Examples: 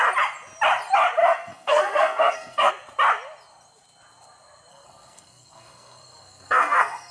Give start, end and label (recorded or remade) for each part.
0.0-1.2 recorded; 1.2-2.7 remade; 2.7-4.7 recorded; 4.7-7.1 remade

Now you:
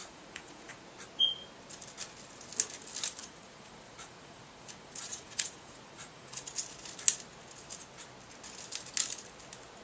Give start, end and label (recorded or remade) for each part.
0.0-0.8 remade; 0.8-3.2 recorded; 3.2-6.3 remade; 6.3-9.8 recorded

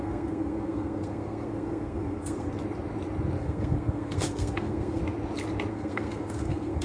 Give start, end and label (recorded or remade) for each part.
0.0-2.5 remade; 2.5-3.4 recorded; 3.4-5.0 remade; 5.0-5.7 recorded; 5.7-6.8 remade

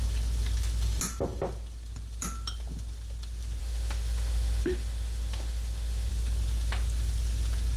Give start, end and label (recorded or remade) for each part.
0.0-3.6 recorded; 3.6-6.1 remade; 6.1-7.8 recorded

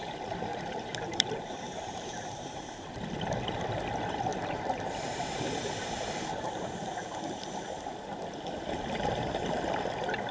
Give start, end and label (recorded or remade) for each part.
0.0-0.5 recorded; 0.5-2.9 remade; 2.9-4.3 recorded; 4.3-7.2 remade; 7.2-10.3 recorded

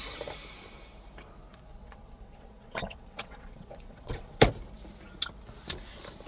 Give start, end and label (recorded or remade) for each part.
0.0-1.7 recorded; 1.7-4.4 remade; 4.4-6.3 recorded